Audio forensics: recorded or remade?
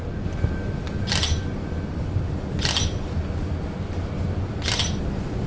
recorded